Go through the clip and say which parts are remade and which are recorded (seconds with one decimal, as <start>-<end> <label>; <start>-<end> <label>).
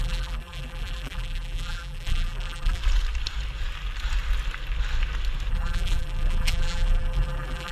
0.0-2.8 remade; 2.8-5.5 recorded; 5.5-7.7 remade